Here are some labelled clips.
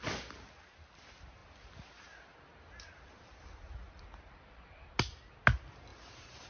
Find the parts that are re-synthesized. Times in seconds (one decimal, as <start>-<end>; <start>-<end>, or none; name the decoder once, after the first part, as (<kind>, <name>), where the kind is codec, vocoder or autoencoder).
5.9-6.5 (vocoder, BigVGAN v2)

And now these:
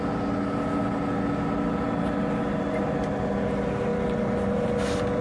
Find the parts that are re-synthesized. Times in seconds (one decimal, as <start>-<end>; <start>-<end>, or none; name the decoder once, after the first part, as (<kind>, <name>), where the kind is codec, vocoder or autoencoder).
none

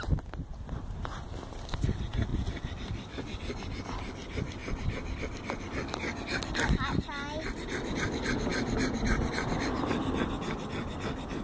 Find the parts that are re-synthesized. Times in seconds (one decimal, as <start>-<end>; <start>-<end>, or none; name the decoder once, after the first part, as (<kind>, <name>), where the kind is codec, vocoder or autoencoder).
none

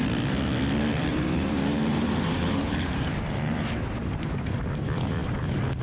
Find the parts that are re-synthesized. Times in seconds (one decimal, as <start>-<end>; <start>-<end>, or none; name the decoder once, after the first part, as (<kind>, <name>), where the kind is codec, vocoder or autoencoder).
1.1-4.6 (vocoder, BigVGAN v2)

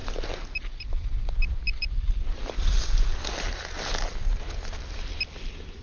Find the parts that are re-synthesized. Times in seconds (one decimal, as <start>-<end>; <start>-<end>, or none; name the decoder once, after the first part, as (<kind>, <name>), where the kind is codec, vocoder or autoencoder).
none